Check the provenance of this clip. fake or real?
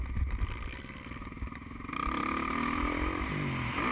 real